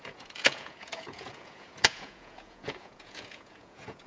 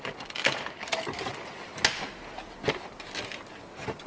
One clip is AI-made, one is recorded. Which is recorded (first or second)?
second